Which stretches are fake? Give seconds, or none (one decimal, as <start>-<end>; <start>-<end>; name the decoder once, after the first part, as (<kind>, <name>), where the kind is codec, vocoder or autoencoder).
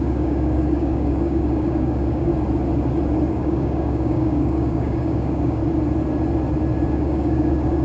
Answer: 0.0-2.3 (codec, DAC); 3.3-5.6; 6.9-7.8